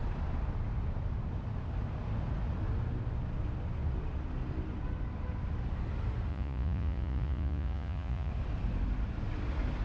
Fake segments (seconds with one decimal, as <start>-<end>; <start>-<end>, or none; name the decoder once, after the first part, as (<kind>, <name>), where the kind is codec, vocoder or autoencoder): 6.3-8.3 (vocoder, Vocos)